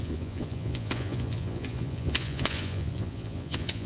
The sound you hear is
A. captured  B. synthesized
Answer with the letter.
B